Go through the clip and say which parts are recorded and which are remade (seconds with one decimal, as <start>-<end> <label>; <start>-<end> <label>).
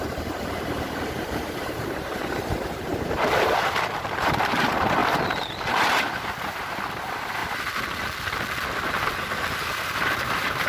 0.0-5.0 remade; 5.0-5.7 recorded; 5.7-7.4 remade; 7.4-9.7 recorded; 9.7-10.7 remade